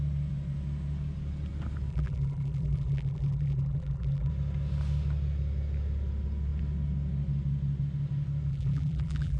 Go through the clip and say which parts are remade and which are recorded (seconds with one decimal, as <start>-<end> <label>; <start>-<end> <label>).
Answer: 0.0-1.9 recorded; 1.9-4.3 remade; 4.3-8.5 recorded; 8.5-9.4 remade